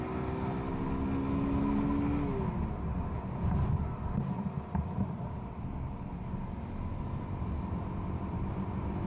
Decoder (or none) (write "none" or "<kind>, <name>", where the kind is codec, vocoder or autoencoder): none